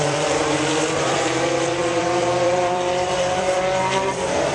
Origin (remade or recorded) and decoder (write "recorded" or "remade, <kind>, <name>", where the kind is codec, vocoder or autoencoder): remade, vocoder, BigVGAN v2